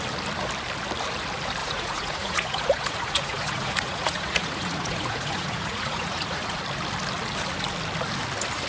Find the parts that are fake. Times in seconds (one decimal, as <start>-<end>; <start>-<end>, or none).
1.6-6.6